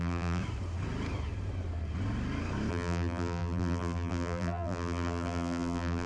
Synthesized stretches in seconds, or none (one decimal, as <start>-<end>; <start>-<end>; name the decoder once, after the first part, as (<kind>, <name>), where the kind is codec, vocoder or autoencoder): 0.0-0.4 (vocoder, BigVGAN v2); 2.7-6.1